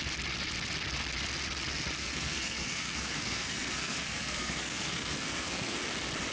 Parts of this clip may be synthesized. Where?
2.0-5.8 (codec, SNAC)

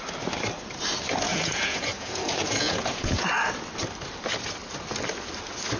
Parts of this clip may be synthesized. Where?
1.3-3.2 (vocoder, Vocos)

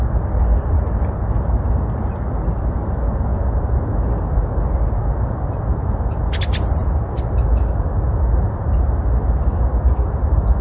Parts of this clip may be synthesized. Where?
none

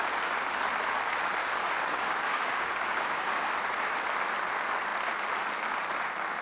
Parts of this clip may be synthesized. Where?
1.4-3.5 (codec, DAC)

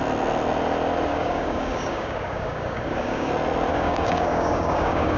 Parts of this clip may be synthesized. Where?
1.1-3.3 (codec, DAC); 3.7-5.2

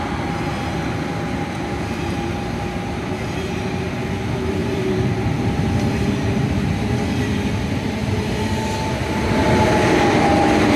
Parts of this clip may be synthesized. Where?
none

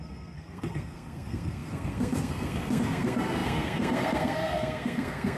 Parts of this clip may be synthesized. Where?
0.0-5.4 (codec, SNAC)

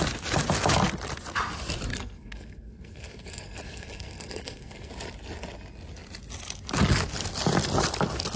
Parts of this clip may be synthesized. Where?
1.9-4.9 (codec, SNAC)